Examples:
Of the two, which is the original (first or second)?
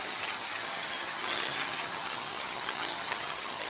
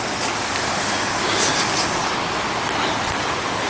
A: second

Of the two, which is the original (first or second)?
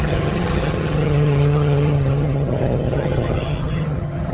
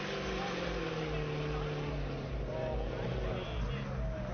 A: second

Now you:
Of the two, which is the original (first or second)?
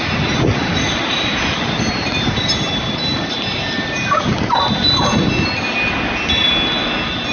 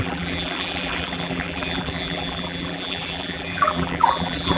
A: first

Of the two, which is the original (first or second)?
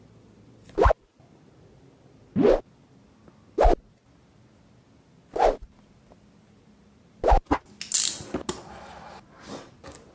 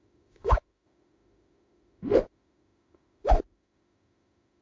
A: first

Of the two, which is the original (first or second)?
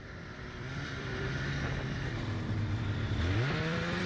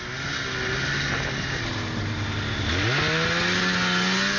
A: second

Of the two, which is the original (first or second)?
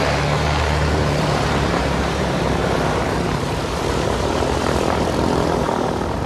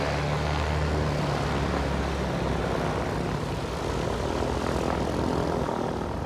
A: second